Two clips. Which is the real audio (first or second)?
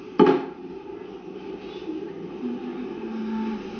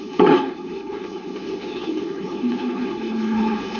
first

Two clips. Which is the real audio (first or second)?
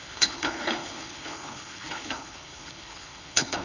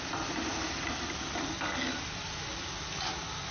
second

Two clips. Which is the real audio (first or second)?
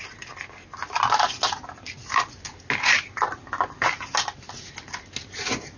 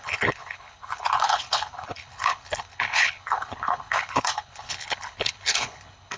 first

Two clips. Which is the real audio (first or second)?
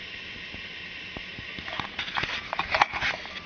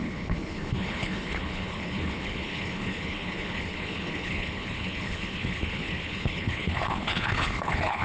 first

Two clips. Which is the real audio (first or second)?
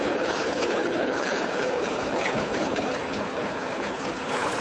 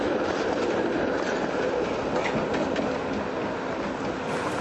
second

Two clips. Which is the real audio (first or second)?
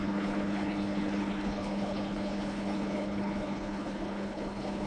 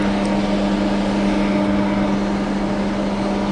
second